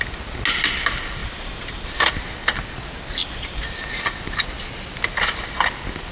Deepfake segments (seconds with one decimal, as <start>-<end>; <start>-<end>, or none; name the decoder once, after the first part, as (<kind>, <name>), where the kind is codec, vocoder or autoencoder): 1.2-2.1 (vocoder, BigVGAN v2); 3.2-3.8